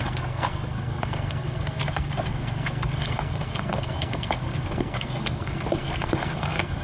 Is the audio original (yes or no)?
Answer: no